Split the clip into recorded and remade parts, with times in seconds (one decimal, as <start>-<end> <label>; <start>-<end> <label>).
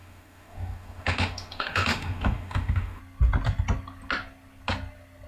0.0-3.0 remade; 3.0-5.3 recorded